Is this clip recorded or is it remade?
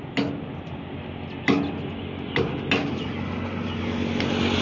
recorded